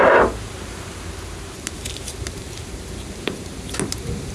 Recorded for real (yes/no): yes